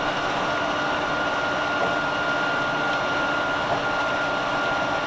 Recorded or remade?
recorded